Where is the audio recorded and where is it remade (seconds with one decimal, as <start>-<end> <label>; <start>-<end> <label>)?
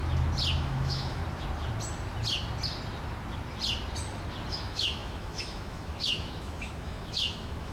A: 0.0-0.6 recorded; 0.6-1.2 remade; 1.2-4.5 recorded; 4.5-7.7 remade